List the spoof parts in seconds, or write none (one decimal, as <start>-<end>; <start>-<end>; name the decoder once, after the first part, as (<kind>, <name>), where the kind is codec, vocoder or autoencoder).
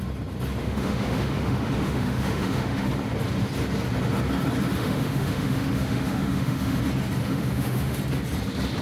0.6-2.9 (autoencoder, DAC-VAE); 4.8-6.8; 7.2-8.0